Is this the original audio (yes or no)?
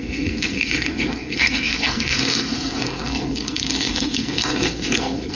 no